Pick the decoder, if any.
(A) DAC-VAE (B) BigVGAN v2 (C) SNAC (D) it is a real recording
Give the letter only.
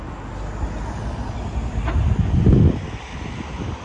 D